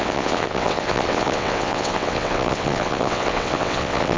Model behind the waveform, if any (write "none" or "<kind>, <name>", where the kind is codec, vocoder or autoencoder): vocoder, WaveNeXt